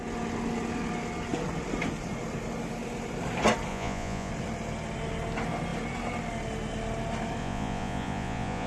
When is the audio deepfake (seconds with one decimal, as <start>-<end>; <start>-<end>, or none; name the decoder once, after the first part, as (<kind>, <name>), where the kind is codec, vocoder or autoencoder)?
3.7-4.3 (vocoder, Vocos); 7.4-8.7